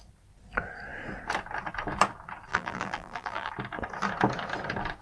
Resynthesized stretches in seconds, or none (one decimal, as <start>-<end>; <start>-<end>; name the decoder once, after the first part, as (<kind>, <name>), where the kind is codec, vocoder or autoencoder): 2.5-3.5 (vocoder, BigVGAN v2)